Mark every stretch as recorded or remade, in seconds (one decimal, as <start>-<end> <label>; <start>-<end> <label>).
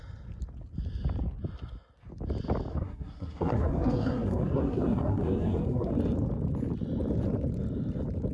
0.0-2.7 recorded; 2.7-5.9 remade; 5.9-8.3 recorded